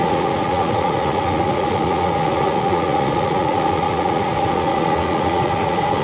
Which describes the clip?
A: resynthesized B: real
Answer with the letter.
A